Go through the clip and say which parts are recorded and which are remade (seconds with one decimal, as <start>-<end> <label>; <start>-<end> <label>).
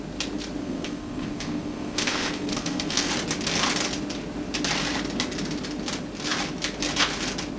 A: 0.0-0.6 recorded; 0.6-3.1 remade; 3.1-7.6 recorded